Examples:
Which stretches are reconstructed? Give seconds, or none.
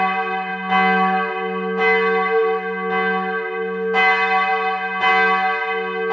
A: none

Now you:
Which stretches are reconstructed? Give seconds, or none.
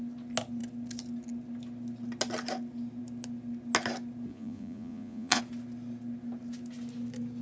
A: 4.3-5.4 (vocoder, Vocos)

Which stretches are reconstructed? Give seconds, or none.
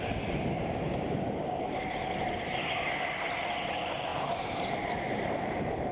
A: 4.1-5.9 (vocoder, BigVGAN v2)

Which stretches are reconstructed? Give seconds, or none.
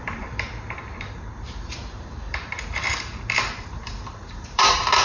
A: 0.0-2.9 (vocoder, BigVGAN v2); 3.6-5.0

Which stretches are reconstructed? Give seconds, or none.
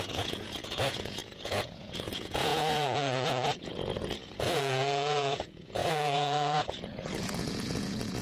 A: 0.0-8.2 (vocoder, Vocos)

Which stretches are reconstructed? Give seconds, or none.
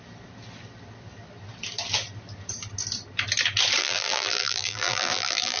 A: 3.8-5.6 (vocoder, BigVGAN v2)